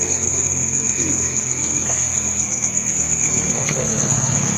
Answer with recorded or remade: remade